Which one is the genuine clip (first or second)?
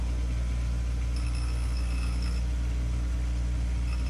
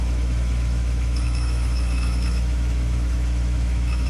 first